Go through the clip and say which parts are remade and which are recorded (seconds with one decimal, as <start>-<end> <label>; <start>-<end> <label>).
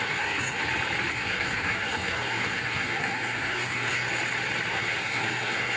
0.0-0.6 remade; 0.6-1.1 recorded; 1.1-4.1 remade; 4.1-4.7 recorded; 4.7-5.8 remade